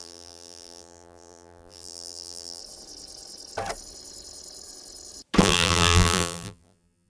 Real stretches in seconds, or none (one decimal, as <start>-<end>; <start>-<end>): 2.6-5.4